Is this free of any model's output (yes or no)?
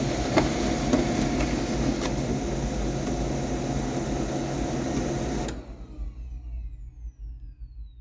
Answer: yes